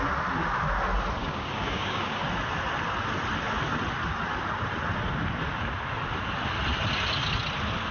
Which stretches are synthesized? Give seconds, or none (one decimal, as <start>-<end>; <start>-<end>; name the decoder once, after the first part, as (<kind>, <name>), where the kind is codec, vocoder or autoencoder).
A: 1.2-2.2 (codec, DAC)